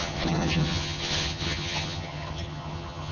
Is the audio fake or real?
fake